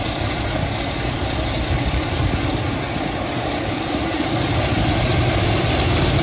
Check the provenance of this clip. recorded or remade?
recorded